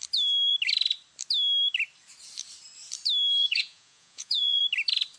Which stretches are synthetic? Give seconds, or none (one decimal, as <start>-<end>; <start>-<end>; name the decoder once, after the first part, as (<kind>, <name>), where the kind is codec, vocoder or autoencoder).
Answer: 3.4-4.6 (vocoder, Vocos)